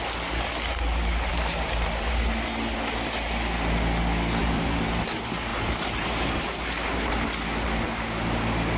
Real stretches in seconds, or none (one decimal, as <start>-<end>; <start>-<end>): 0.0-1.3; 2.3-4.4; 5.0-5.5; 6.1-8.8